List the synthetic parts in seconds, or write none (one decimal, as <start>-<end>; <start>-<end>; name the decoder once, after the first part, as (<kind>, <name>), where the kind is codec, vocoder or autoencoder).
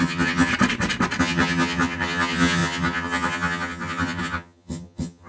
0.0-0.5 (vocoder, HiFi-GAN); 1.2-5.3